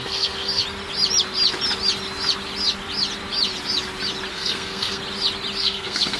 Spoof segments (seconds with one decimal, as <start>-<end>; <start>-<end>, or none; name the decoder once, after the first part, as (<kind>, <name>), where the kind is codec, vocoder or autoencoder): 0.0-0.6 (codec, SNAC); 4.3-5.0; 5.6-6.2